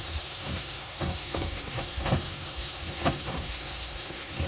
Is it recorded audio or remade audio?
remade